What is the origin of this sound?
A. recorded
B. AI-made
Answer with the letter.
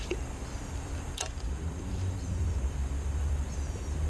B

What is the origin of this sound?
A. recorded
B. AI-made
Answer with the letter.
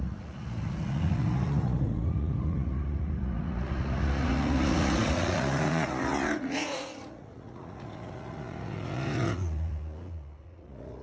B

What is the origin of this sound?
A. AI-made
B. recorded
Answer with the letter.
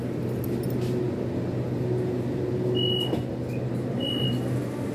B